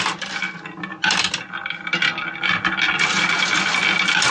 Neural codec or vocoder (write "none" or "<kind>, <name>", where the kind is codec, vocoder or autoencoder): none